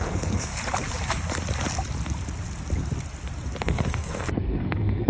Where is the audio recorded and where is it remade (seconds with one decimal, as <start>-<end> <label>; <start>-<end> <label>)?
0.0-0.5 remade; 0.5-3.6 recorded; 3.6-5.1 remade

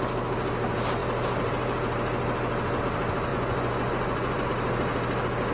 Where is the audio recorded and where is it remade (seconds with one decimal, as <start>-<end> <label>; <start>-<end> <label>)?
0.0-3.3 recorded; 3.3-4.5 remade; 4.5-5.5 recorded